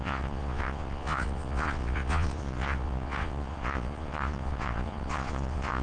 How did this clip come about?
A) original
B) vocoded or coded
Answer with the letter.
B